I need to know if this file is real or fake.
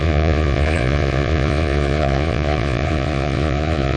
fake